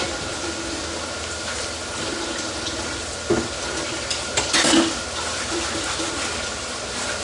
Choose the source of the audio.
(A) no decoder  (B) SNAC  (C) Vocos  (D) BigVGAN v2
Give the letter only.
A